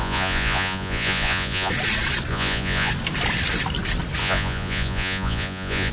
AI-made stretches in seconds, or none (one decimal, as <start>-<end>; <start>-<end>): 0.0-1.7; 2.3-2.9; 4.2-5.9